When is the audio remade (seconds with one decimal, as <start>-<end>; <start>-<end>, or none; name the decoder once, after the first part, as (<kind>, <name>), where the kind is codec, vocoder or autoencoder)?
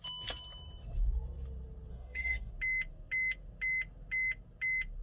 1.9-2.5 (codec, DAC)